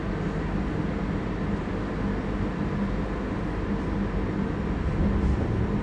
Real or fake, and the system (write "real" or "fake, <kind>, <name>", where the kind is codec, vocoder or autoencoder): real